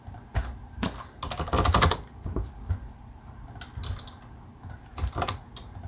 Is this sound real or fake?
real